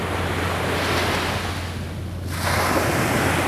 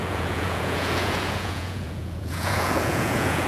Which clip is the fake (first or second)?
second